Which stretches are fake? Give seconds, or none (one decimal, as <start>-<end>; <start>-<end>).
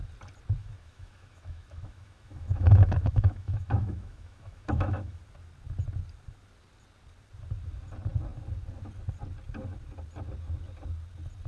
0.6-5.2